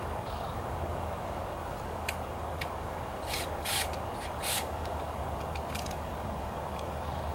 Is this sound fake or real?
fake